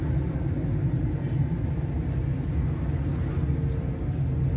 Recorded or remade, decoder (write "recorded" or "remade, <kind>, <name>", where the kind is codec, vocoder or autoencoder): recorded